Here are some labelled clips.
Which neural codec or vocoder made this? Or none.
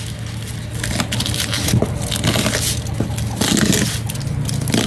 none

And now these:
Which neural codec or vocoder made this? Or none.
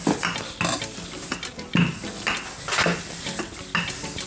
none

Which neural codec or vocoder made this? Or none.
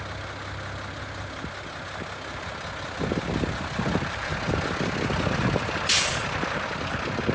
none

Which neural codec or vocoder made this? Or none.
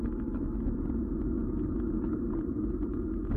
none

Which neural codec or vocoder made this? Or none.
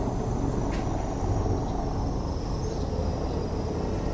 none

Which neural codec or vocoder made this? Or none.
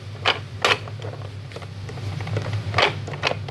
none